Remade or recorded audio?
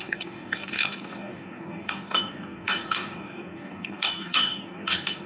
remade